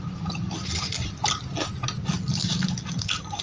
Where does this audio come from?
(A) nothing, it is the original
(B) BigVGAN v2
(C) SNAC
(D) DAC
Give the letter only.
A